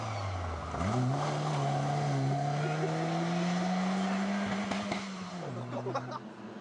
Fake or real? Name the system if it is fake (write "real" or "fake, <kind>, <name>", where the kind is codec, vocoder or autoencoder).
real